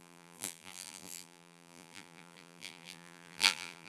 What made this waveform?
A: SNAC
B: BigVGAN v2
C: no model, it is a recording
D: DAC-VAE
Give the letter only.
B